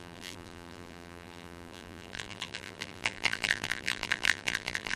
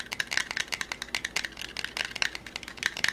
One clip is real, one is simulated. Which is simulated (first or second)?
first